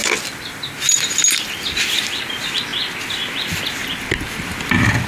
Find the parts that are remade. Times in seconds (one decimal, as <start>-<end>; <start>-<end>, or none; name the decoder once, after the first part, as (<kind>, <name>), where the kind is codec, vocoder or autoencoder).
none